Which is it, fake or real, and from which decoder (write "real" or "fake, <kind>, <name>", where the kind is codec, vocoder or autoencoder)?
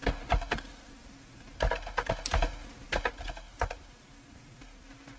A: real